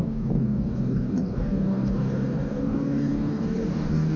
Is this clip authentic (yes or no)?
no